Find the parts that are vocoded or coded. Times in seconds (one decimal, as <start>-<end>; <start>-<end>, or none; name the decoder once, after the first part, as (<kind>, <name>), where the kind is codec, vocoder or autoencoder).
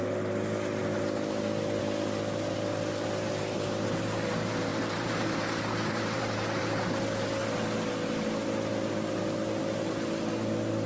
4.7-6.9 (vocoder, BigVGAN v2)